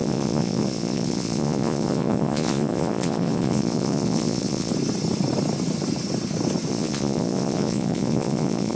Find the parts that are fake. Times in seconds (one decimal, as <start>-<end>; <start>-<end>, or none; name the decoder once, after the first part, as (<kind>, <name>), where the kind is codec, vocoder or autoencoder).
0.0-4.7 (vocoder, Vocos); 6.7-8.8